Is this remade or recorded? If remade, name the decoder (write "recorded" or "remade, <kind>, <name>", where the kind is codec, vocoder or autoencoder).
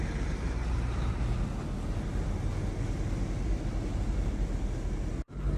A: recorded